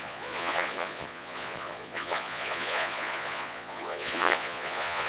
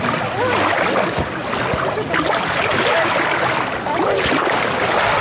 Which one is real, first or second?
second